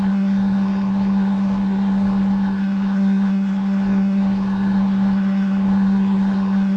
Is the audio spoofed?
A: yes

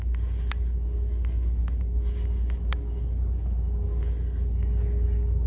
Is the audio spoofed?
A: no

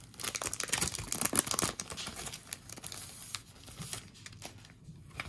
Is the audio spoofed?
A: no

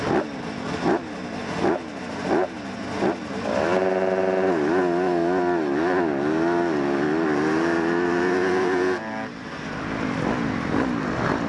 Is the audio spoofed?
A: no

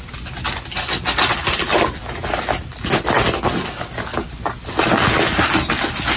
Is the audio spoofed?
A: no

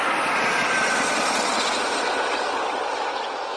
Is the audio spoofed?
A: no